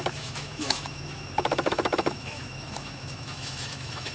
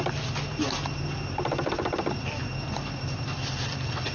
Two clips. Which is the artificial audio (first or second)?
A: first